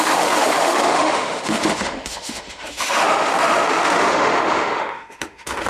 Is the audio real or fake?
fake